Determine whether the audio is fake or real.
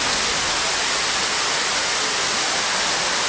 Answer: real